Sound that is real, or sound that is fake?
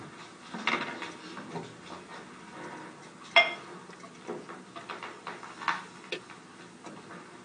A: real